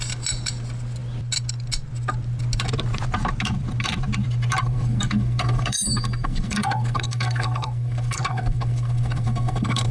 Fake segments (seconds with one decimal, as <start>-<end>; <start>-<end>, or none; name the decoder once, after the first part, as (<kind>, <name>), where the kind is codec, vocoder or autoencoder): 4.6-9.9 (codec, SNAC)